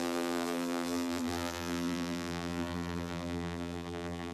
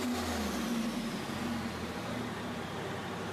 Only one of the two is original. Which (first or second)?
second